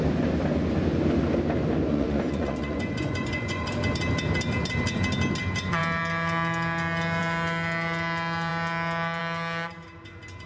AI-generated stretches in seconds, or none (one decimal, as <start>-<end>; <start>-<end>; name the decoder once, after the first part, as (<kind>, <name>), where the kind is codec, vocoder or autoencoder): 1.9-3.7 (vocoder, Vocos)